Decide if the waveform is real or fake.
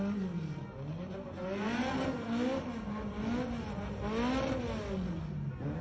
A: real